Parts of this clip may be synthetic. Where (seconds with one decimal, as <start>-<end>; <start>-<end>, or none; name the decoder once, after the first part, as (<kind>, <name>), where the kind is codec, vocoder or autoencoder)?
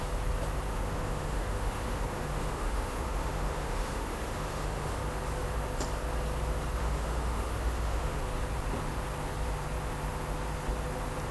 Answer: 0.7-5.0 (autoencoder, DAC-VAE); 6.8-8.2